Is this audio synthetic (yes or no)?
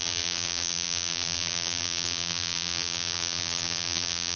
yes